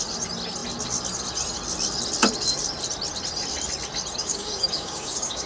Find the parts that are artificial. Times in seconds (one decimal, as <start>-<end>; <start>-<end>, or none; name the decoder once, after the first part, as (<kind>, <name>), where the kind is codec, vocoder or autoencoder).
4.2-5.5 (codec, DAC)